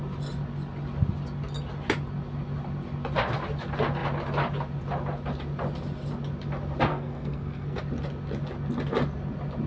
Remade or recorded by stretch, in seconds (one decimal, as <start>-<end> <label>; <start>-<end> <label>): 0.0-6.9 recorded; 6.9-7.8 remade; 7.8-9.7 recorded